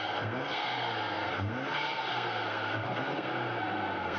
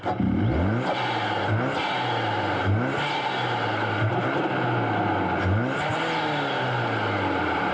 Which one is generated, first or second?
first